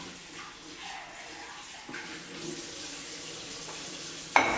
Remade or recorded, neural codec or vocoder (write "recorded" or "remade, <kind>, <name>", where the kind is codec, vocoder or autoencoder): recorded